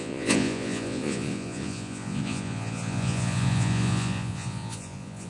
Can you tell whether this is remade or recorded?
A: remade